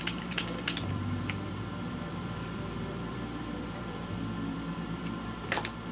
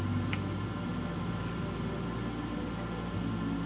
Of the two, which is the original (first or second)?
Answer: second